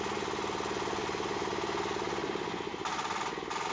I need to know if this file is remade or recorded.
recorded